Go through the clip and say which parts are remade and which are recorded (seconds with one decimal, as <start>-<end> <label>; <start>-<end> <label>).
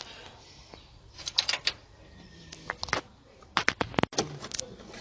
0.0-5.0 recorded